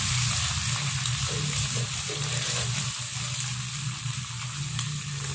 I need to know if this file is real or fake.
real